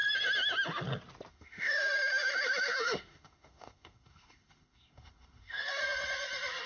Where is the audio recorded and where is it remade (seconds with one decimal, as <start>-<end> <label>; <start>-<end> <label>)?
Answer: 0.0-1.3 recorded; 1.3-5.8 remade; 5.8-6.7 recorded